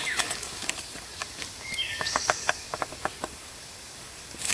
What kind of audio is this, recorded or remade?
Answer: remade